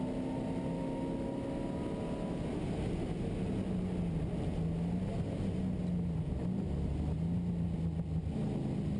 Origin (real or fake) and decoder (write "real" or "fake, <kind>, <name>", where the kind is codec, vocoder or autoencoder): real